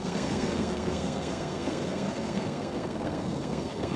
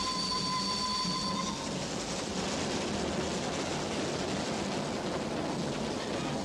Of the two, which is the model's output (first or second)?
first